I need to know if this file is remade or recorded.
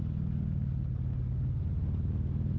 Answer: recorded